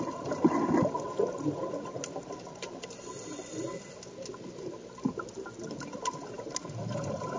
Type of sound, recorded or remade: recorded